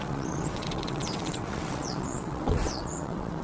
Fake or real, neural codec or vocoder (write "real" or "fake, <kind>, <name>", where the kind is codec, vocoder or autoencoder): fake, vocoder, WaveNeXt